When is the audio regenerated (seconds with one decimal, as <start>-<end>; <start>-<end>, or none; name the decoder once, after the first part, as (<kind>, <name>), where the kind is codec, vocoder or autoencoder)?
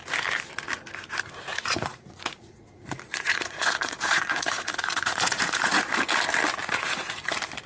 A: 1.5-5.8 (vocoder, Vocos); 6.6-7.2